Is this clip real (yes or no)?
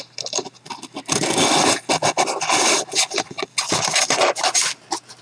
yes